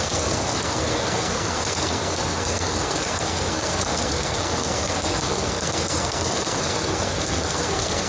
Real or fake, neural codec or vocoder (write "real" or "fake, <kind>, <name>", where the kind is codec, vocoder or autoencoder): fake, codec, SNAC